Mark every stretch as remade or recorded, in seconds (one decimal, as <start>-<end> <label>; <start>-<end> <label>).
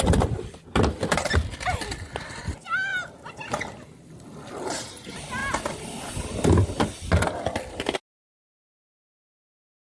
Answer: 0.0-9.9 recorded